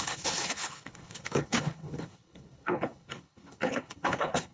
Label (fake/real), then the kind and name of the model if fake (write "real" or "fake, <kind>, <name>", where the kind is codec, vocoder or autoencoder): fake, codec, HILCodec